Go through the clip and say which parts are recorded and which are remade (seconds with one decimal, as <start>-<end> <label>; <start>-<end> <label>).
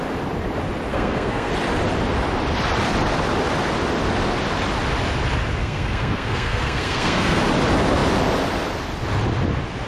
0.0-0.9 recorded; 0.9-1.5 remade; 1.5-5.6 recorded; 5.6-7.4 remade; 7.4-9.9 recorded